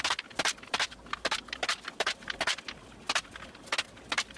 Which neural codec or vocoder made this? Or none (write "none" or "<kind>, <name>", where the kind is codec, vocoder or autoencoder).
none